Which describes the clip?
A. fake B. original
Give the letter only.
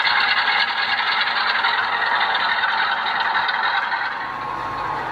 B